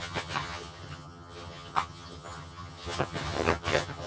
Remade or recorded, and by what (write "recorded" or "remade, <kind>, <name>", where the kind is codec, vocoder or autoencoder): remade, vocoder, HiFi-GAN